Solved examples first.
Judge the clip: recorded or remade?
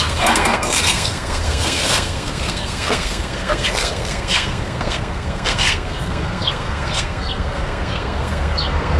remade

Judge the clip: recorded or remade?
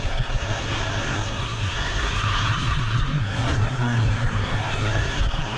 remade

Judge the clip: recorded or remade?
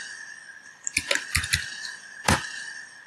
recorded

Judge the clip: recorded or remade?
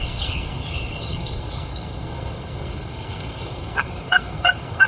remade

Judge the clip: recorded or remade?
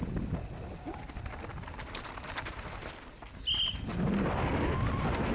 recorded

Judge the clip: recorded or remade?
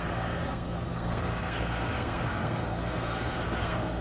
remade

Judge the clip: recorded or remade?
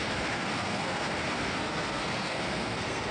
remade